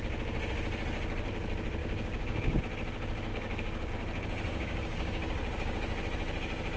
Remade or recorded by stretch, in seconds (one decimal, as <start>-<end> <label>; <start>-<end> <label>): 0.0-1.8 recorded; 1.8-2.6 remade; 2.6-3.3 recorded; 3.3-3.9 remade; 3.9-4.5 recorded; 4.5-5.8 remade; 5.8-6.8 recorded